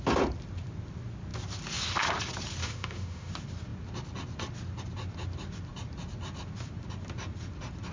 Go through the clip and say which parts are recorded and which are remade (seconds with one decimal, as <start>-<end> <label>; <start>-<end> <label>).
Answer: 0.0-2.6 recorded; 2.6-3.3 remade; 3.3-7.9 recorded